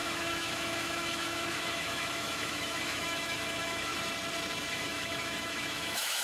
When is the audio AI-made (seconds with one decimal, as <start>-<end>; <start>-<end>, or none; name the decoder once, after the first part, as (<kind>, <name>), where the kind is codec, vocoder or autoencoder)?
0.0-3.9 (autoencoder, DAC-VAE); 4.7-6.2